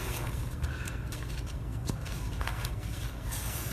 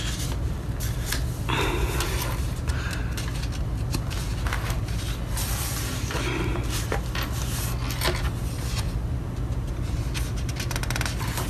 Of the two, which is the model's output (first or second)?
first